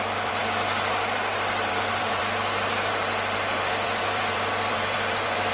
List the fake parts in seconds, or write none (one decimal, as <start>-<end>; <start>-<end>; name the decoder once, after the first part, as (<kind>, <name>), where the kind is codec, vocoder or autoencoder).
0.0-0.4 (vocoder, BigVGAN v2); 1.7-2.2; 3.6-5.5